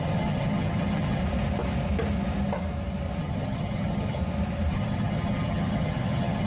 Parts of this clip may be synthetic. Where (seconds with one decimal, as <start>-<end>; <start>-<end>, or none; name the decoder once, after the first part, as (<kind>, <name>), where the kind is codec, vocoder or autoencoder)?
0.0-1.2 (vocoder, HiFi-GAN); 3.2-4.2; 4.7-6.5